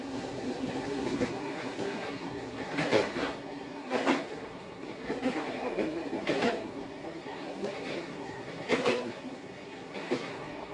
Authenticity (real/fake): fake